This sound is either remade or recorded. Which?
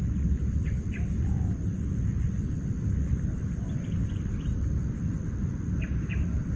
recorded